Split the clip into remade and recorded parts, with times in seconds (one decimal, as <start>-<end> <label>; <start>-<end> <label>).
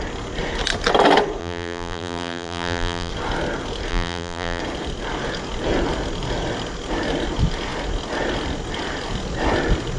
0.0-1.4 recorded; 1.4-3.1 remade; 3.1-3.9 recorded; 3.9-4.6 remade; 4.6-10.0 recorded